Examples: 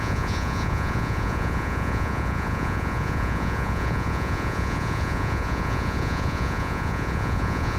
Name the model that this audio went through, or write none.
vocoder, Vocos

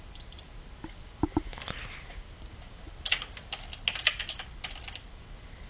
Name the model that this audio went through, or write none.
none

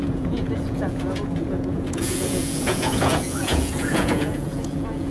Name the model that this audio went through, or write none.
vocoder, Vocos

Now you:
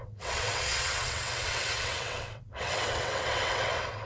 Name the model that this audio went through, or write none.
vocoder, WaveNeXt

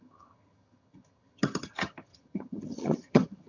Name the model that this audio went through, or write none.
vocoder, HiFi-GAN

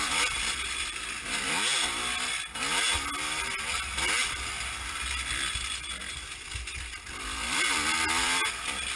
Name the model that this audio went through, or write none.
none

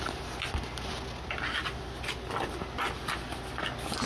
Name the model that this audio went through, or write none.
none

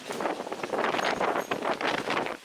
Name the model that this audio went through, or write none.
none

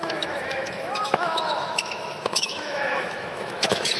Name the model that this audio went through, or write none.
autoencoder, DAC-VAE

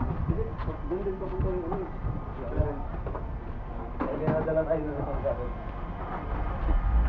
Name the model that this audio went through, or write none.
none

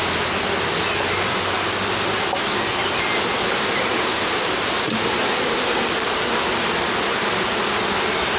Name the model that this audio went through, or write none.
none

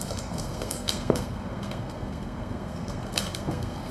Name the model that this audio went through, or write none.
codec, SNAC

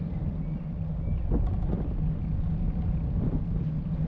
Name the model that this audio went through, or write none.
none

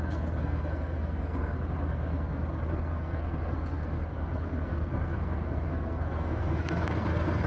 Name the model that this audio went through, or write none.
codec, SNAC